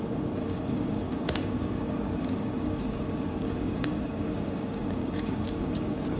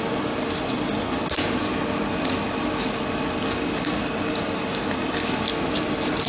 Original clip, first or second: second